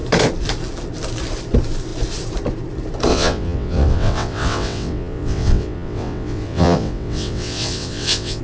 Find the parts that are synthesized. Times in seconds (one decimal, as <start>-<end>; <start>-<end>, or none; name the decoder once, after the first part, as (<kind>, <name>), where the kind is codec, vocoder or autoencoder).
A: 3.1-8.4 (vocoder, WaveNeXt)